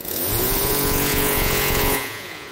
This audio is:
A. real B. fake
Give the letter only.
B